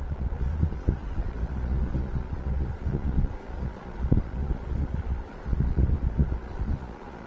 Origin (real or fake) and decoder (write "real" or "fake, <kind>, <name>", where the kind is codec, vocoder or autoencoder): fake, vocoder, Vocos